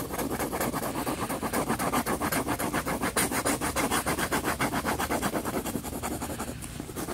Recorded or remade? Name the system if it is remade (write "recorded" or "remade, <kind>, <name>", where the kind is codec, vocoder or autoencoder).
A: recorded